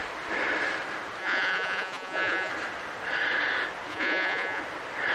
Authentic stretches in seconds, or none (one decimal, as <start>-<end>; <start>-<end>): 0.0-1.2; 2.5-3.9; 4.6-5.1